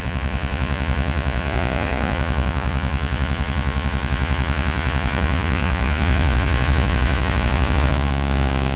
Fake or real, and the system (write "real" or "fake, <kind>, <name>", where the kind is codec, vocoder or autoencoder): fake, vocoder, Vocos